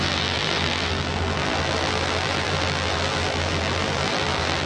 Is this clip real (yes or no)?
no